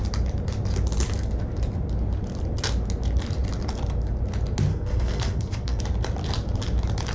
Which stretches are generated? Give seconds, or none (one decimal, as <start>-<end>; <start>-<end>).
4.7-5.8